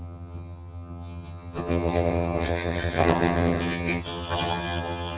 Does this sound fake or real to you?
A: fake